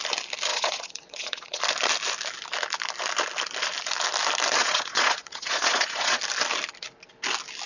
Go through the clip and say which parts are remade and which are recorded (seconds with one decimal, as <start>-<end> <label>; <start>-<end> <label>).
0.0-0.5 recorded; 0.5-1.6 remade; 1.6-4.6 recorded; 4.6-6.2 remade; 6.2-7.7 recorded